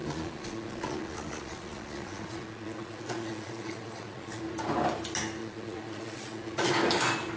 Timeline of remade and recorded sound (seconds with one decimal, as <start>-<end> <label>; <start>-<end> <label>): 0.0-4.4 remade; 4.4-5.4 recorded; 5.4-6.7 remade; 6.7-7.4 recorded

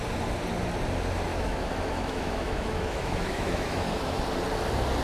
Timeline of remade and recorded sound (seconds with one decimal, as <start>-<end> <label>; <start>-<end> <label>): 0.0-1.3 recorded; 1.3-4.2 remade; 4.2-5.0 recorded

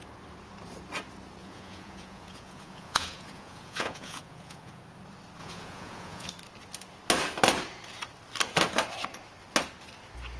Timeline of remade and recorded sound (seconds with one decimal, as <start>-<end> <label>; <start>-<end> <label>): 0.0-1.4 recorded; 1.4-4.8 remade; 4.8-5.4 recorded; 5.4-6.3 remade; 6.3-10.4 recorded